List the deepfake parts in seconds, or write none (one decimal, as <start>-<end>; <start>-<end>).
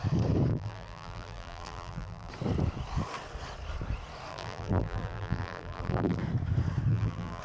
0.5-2.3; 4.3-6.2; 6.9-7.4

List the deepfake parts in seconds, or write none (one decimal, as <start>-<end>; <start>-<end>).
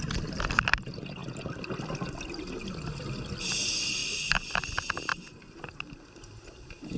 4.0-4.5; 5.1-5.9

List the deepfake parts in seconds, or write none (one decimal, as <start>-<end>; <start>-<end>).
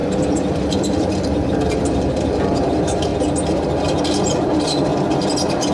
0.7-3.1; 4.2-4.9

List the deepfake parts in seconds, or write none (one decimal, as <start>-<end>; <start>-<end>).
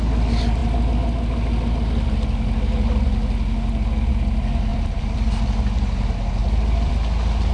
4.7-5.3; 6.4-6.9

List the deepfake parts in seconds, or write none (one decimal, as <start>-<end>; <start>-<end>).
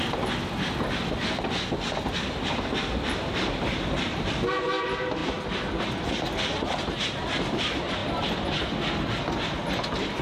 5.2-5.8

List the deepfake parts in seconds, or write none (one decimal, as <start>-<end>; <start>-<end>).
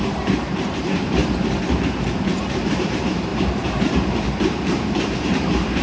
0.0-1.2; 2.6-5.8